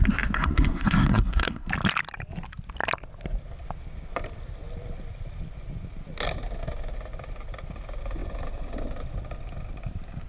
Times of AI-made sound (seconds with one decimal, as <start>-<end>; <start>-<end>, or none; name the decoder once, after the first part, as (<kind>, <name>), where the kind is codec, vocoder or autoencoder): 0.4-1.7 (codec, SNAC)